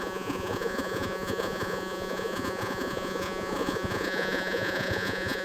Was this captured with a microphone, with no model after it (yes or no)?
no